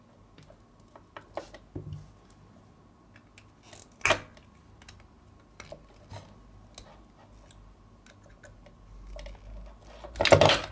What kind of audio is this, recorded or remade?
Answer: recorded